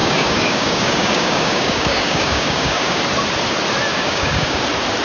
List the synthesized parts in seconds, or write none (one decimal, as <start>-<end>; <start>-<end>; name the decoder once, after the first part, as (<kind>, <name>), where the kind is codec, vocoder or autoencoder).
0.0-3.0 (codec, DAC); 3.9-4.6